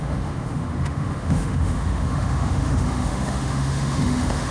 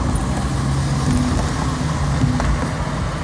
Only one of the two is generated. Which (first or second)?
first